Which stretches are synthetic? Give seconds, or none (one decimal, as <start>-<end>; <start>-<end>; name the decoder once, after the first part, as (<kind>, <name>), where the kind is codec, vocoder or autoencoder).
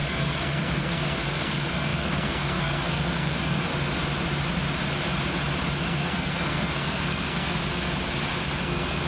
0.0-3.7 (codec, SNAC); 5.8-7.6; 8.6-9.1